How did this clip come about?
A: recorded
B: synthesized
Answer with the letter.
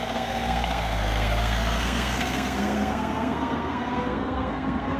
B